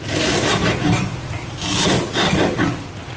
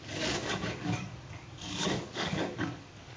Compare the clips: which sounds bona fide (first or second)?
first